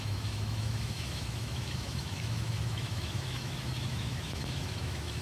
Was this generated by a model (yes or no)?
yes